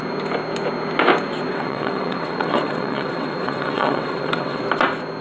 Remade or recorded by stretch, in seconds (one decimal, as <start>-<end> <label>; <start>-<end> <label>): 0.0-1.5 recorded; 1.5-4.6 remade; 4.6-5.2 recorded